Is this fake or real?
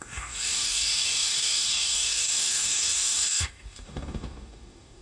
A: fake